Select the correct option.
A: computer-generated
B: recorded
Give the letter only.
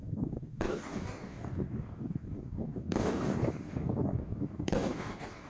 A